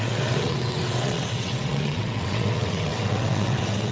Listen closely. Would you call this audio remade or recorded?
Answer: remade